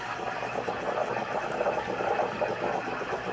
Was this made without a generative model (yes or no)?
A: yes